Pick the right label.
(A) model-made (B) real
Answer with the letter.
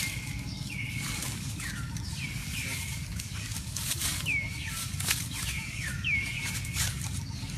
A